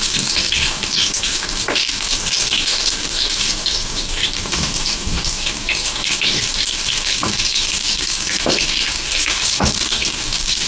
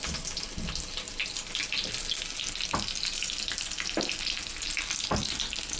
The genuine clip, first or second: second